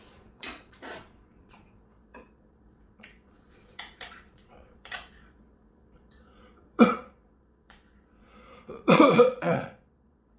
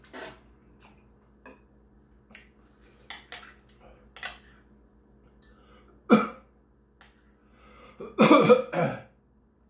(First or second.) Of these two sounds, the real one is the second